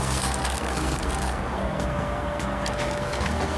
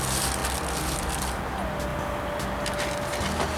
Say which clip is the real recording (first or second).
second